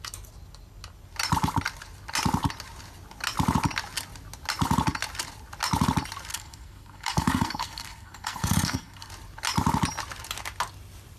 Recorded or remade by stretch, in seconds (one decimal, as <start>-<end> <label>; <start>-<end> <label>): 0.0-6.3 recorded; 6.3-9.1 remade; 9.1-11.2 recorded